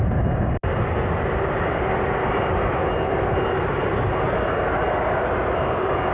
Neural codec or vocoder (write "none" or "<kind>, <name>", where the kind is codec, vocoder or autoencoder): none